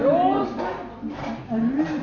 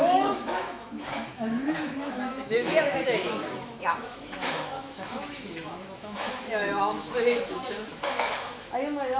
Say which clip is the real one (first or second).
first